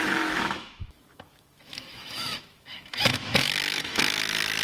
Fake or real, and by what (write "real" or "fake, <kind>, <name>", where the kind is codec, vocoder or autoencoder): fake, autoencoder, DAC-VAE